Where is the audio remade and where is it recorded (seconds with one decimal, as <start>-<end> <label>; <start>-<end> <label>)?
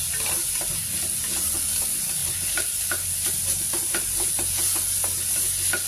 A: 0.0-5.9 recorded